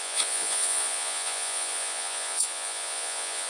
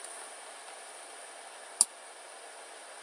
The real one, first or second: second